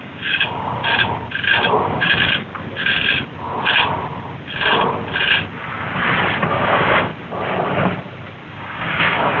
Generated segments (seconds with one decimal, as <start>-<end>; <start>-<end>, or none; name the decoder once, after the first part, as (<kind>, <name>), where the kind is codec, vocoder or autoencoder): 0.0-0.8 (codec, DAC); 1.9-2.5; 6.5-7.1; 8.5-9.4